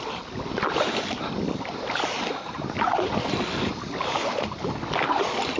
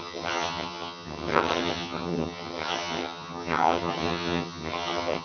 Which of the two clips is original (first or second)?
first